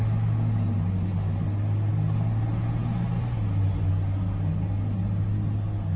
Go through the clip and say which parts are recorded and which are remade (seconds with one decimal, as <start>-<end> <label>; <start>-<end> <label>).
0.0-6.0 recorded